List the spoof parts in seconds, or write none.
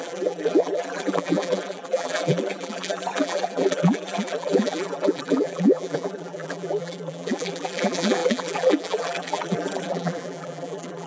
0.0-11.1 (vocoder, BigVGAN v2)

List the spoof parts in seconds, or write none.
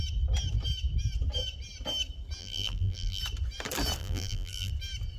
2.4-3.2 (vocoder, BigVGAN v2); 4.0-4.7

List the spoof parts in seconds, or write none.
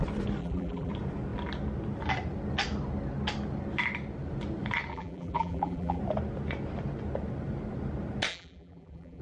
0.4-0.9 (vocoder, BigVGAN v2); 4.9-6.0; 8.3-9.2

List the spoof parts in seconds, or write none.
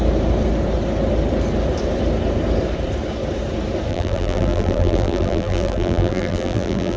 3.9-7.0 (vocoder, BigVGAN v2)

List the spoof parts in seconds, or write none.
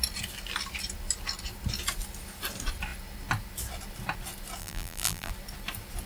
4.6-5.3 (vocoder, BigVGAN v2)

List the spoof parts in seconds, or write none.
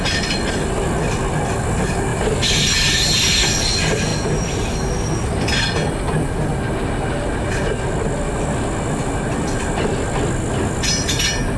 2.1-2.9 (vocoder, BigVGAN v2)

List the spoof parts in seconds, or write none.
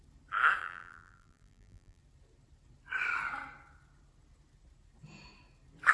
0.6-2.0 (vocoder, BigVGAN v2)